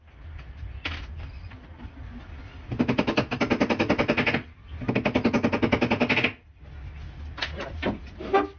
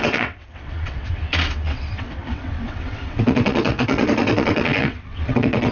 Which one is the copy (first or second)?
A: second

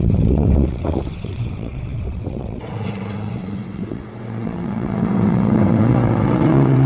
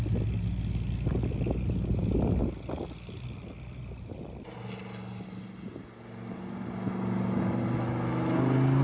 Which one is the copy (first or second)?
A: first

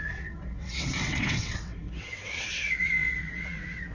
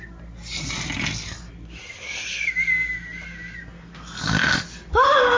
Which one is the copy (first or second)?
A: first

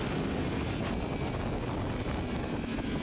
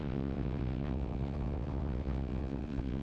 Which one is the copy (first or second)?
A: second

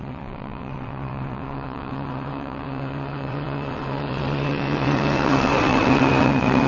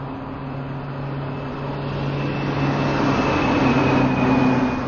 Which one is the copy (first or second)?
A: first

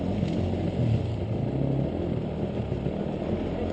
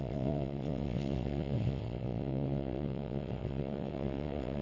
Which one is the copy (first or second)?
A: second